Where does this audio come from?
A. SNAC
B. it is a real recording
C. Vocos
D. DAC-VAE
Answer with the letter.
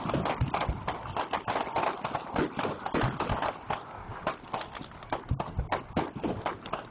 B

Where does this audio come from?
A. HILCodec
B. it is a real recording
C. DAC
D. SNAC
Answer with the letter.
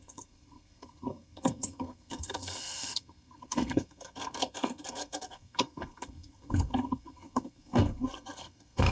D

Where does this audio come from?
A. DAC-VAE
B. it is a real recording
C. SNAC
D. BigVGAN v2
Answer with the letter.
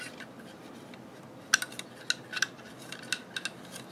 B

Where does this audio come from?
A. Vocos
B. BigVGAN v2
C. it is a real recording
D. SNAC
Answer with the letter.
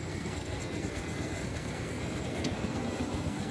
D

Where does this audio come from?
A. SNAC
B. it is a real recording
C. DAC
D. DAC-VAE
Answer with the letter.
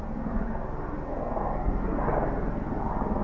B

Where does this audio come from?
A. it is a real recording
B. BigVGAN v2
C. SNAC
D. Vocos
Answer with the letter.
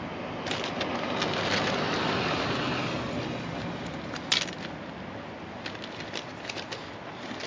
A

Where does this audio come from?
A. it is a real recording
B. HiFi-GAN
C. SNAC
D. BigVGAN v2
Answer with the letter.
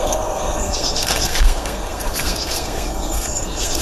C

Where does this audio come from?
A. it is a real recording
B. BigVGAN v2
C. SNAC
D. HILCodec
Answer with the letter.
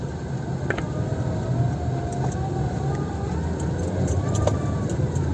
A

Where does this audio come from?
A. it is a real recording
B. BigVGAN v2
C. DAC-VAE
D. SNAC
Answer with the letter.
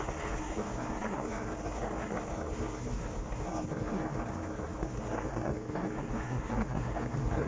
D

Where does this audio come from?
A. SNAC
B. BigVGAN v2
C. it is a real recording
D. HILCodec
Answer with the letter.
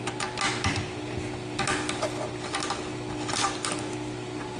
C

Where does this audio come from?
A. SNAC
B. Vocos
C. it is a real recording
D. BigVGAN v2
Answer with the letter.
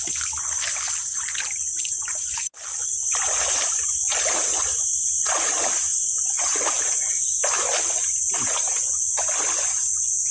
C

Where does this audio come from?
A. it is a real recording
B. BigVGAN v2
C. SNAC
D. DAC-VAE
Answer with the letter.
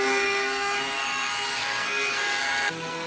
C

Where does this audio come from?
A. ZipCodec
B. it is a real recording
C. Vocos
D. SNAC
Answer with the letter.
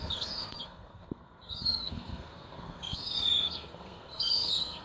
D